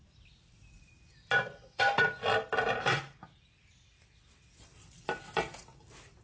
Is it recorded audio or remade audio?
remade